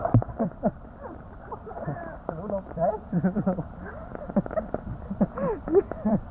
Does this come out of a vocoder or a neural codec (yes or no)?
yes